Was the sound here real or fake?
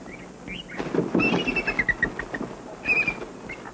real